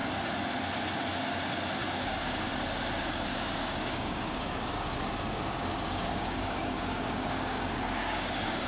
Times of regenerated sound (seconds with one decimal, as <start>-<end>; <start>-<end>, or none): 1.8-2.5; 3.3-8.7